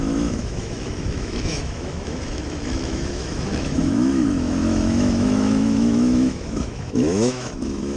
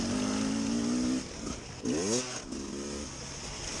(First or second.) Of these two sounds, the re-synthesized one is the first